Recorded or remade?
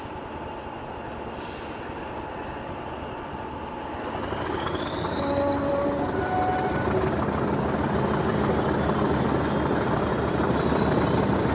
recorded